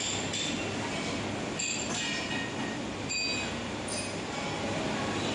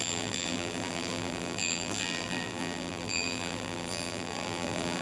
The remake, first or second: second